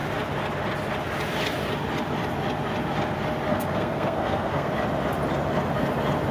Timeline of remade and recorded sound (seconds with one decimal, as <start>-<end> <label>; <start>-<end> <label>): 0.0-3.5 recorded; 3.5-4.7 remade; 4.7-6.3 recorded

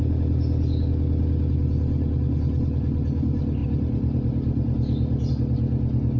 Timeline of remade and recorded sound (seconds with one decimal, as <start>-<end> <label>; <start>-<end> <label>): 0.0-3.6 recorded; 3.6-5.3 remade; 5.3-6.2 recorded